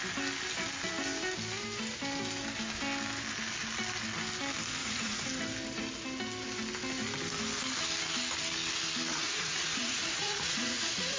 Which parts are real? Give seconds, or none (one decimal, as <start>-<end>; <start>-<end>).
0.0-4.8; 5.3-9.1